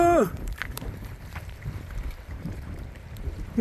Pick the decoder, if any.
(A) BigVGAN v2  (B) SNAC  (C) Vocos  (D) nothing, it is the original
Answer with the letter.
A